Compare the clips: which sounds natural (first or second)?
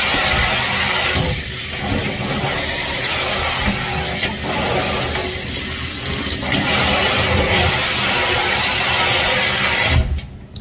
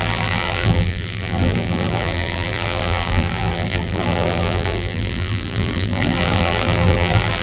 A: first